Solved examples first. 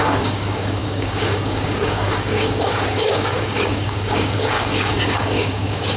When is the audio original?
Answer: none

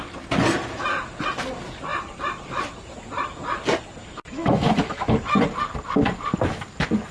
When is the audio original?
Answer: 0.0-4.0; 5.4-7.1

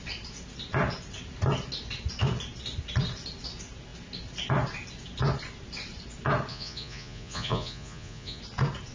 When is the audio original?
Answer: 0.0-6.5; 8.4-8.9